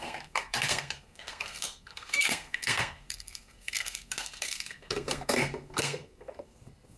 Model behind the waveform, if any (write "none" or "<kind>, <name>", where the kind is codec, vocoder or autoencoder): codec, SNAC